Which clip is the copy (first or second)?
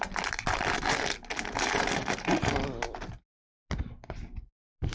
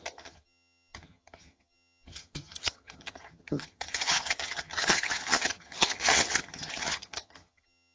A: second